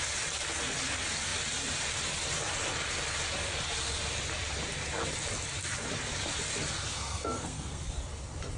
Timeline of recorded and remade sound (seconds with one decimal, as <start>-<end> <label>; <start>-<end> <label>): 0.0-6.9 recorded; 6.9-7.8 remade; 7.8-8.6 recorded